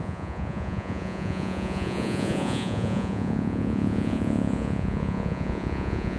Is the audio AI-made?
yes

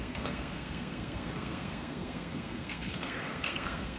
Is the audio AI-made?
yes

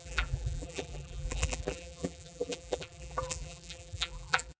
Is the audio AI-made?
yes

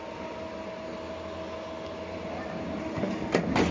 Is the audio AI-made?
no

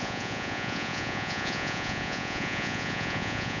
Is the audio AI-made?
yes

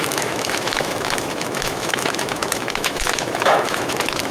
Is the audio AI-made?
yes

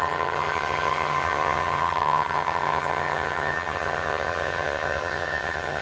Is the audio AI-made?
yes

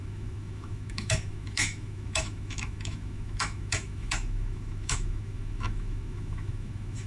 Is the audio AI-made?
yes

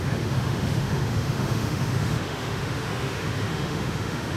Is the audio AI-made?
yes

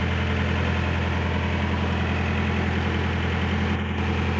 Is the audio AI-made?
no